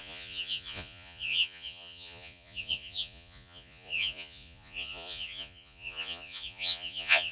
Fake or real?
fake